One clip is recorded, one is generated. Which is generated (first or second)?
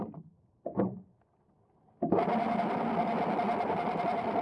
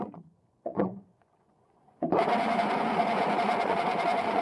second